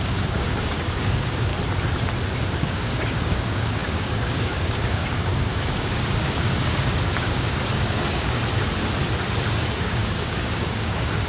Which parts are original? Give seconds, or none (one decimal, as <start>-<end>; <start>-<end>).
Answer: 1.5-2.6; 8.4-9.5